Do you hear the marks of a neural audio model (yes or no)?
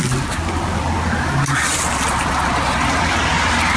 no